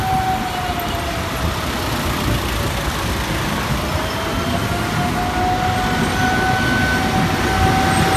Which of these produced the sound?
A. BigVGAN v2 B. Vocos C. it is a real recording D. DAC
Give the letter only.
C